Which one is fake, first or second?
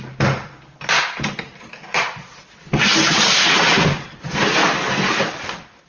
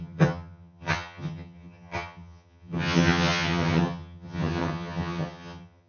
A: second